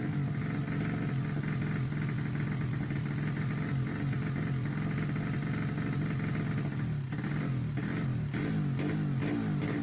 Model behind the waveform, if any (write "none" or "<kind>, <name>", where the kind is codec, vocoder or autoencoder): none